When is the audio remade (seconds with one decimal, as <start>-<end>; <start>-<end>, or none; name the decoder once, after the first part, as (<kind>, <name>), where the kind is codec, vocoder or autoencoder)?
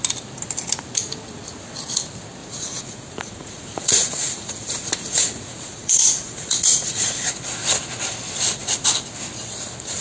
2.4-7.3 (vocoder, Vocos)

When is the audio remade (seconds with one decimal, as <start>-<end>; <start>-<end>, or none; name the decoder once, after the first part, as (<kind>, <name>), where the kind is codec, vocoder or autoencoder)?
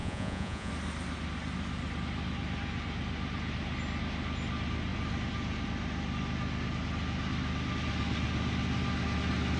0.0-0.7 (vocoder, Vocos)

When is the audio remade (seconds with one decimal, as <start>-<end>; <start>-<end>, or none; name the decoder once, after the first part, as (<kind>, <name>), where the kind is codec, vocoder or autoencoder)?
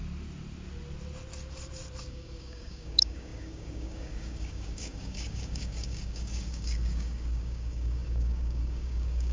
2.0-9.3 (codec, DAC)